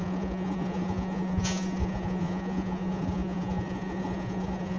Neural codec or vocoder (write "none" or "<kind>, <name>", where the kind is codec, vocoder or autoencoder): vocoder, Vocos